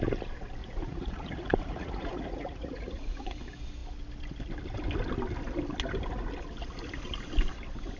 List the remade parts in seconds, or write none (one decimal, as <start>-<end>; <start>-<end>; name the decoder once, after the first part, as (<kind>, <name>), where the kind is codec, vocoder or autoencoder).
0.6-3.4 (vocoder, Vocos)